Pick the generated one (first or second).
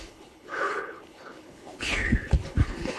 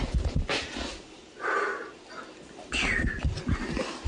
first